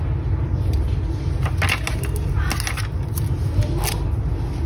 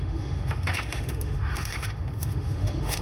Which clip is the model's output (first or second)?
second